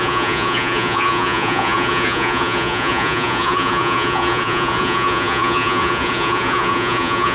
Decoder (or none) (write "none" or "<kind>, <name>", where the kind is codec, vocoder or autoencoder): vocoder, Vocos